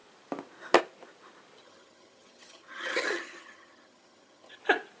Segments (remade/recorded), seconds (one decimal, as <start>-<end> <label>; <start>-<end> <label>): 0.0-1.6 recorded; 1.6-4.6 remade; 4.6-5.0 recorded